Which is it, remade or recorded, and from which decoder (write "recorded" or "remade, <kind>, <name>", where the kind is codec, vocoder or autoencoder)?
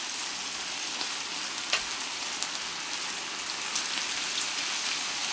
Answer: recorded